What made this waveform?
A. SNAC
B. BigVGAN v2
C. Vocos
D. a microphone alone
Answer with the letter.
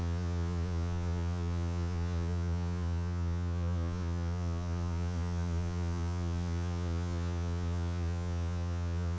C